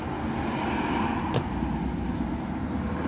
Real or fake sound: real